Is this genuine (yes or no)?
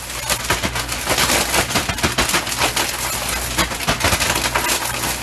yes